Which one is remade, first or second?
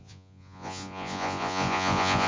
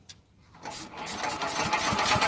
first